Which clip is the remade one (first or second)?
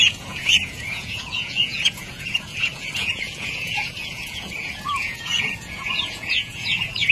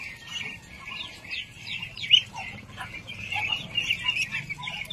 first